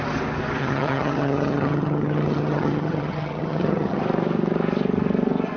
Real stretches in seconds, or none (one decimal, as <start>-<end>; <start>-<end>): 0.0-0.6; 4.0-5.6